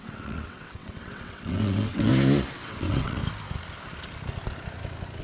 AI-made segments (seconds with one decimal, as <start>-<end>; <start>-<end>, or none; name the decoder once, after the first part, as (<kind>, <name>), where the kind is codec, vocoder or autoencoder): 0.0-2.1 (vocoder, WaveNeXt); 2.7-3.2

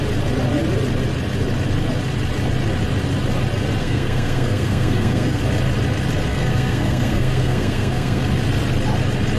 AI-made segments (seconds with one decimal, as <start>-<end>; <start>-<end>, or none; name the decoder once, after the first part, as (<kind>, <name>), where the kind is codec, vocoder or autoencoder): 3.8-5.4 (codec, SNAC); 6.3-8.2

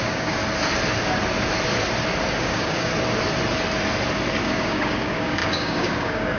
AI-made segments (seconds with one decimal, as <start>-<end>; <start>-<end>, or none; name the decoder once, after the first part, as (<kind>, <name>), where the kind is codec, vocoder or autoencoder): 0.0-0.4 (codec, DAC); 2.4-2.9; 4.4-6.4

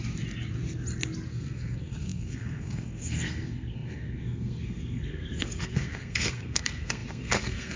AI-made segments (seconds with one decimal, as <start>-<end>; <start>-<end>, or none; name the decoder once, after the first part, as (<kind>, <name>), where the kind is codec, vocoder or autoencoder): 1.3-7.8 (codec, SNAC)

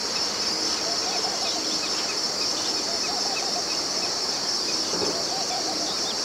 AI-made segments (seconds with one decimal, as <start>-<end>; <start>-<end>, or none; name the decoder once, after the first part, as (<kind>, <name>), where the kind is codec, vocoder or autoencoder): 1.9-6.2 (vocoder, BigVGAN v2)